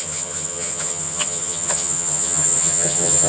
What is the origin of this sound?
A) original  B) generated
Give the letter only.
B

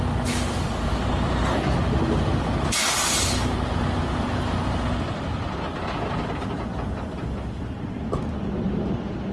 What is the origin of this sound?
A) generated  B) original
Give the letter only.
B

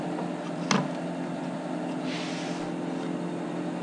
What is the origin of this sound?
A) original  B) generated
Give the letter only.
A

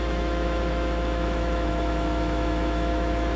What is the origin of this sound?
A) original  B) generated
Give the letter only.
B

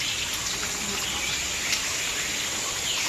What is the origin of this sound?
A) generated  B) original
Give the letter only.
B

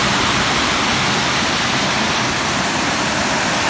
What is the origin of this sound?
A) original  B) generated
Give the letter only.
A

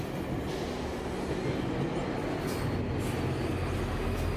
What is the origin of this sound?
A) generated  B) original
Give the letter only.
B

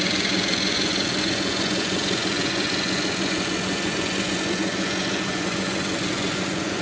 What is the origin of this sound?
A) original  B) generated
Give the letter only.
B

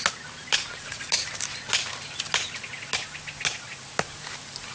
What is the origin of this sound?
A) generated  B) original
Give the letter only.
B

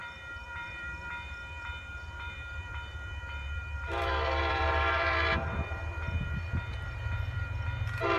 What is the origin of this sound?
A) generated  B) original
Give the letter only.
A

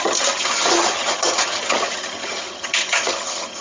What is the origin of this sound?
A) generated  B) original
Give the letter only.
A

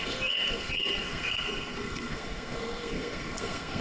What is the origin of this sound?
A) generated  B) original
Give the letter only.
A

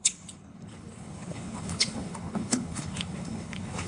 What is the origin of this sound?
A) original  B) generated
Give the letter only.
B